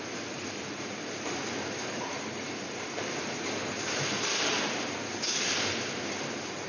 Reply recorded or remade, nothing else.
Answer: remade